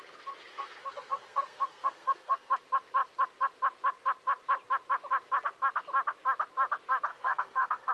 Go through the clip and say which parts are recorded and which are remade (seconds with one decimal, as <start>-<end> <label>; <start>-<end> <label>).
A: 0.0-0.5 recorded; 0.5-2.5 remade; 2.5-7.1 recorded; 7.1-7.9 remade